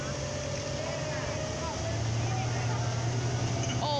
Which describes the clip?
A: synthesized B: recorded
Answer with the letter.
B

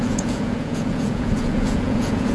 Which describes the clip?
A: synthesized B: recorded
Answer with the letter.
A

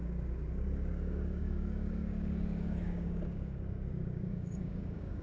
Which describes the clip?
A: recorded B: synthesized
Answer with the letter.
B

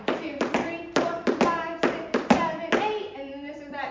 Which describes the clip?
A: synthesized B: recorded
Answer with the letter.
B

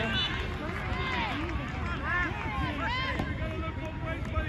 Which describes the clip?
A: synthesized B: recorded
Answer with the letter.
B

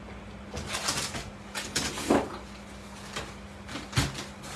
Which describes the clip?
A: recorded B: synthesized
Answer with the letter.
A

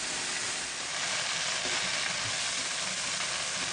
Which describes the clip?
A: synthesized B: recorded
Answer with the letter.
B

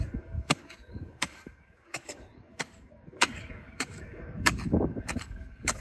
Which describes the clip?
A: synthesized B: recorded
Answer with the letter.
A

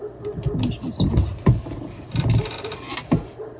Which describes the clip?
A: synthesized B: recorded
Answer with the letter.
B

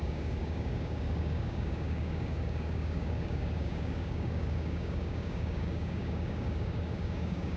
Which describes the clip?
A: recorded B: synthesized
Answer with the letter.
B